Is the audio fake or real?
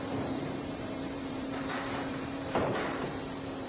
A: fake